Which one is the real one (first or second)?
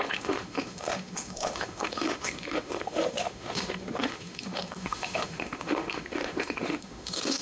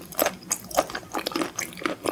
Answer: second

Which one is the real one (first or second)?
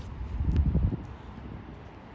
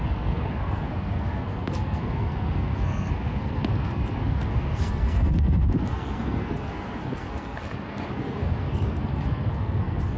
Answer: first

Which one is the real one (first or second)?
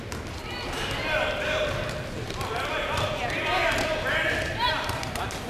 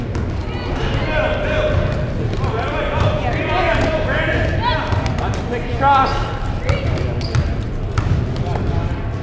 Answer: second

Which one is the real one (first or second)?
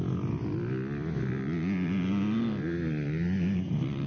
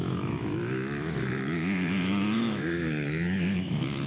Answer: first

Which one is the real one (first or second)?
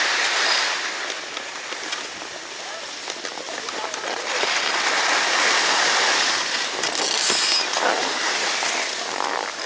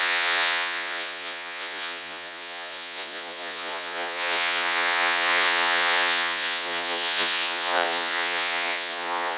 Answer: first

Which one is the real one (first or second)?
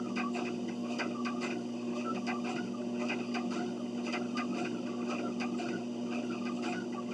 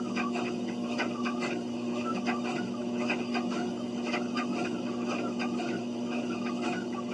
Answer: first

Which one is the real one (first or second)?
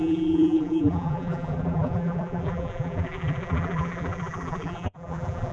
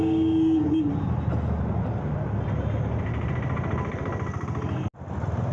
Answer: second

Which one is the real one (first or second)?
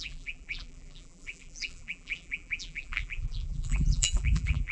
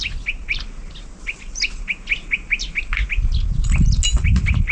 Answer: second